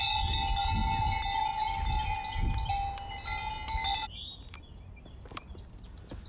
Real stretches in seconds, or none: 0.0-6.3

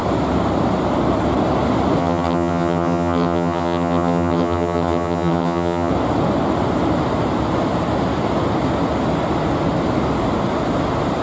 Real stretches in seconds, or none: 0.0-2.0; 5.9-11.2